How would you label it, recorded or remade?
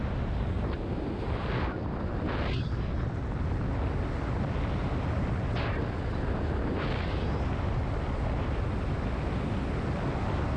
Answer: recorded